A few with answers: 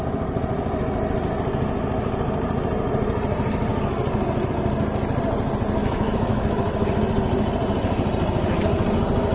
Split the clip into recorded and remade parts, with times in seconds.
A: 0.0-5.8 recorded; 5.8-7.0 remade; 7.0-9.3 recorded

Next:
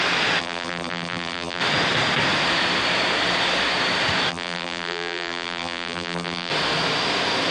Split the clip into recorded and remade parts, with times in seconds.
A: 0.0-0.4 recorded; 0.4-1.6 remade; 1.6-4.3 recorded; 4.3-6.5 remade; 6.5-7.5 recorded

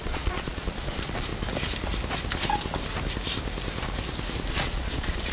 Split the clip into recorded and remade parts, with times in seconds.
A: 0.0-1.3 remade; 1.3-4.5 recorded; 4.5-5.3 remade

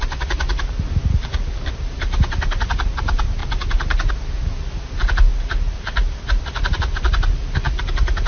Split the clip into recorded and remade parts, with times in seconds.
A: 0.0-8.3 recorded

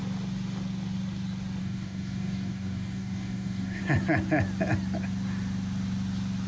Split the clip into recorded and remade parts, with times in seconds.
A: 0.0-1.6 recorded; 1.6-3.8 remade; 3.8-6.5 recorded

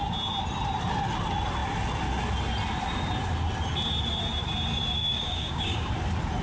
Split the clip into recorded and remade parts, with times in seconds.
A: 0.0-5.0 recorded; 5.0-5.9 remade; 5.9-6.4 recorded

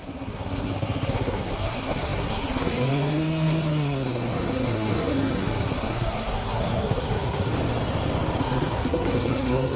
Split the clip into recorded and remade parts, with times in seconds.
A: 0.0-7.5 remade; 7.5-8.4 recorded; 8.4-9.8 remade